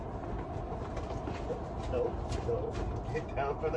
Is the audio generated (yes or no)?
no